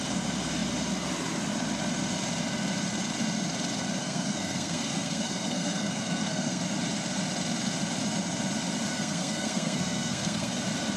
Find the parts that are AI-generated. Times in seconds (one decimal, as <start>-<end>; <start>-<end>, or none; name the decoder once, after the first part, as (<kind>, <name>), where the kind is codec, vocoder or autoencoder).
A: 4.0-6.6 (codec, SNAC); 8.9-10.5